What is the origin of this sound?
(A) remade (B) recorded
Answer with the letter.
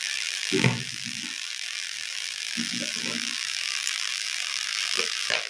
A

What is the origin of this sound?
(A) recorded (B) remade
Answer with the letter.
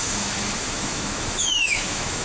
B